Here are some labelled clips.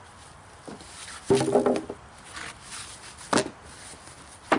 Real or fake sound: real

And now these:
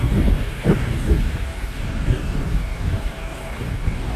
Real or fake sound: fake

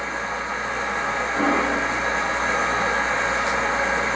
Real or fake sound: real